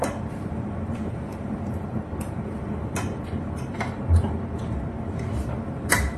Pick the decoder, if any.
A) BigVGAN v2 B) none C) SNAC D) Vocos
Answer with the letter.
A